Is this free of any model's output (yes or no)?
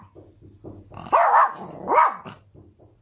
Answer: yes